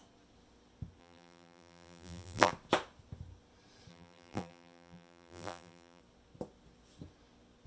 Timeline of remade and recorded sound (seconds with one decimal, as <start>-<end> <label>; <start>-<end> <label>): 0.0-1.0 recorded; 1.0-2.5 remade; 2.5-3.9 recorded; 3.9-6.0 remade; 6.0-7.7 recorded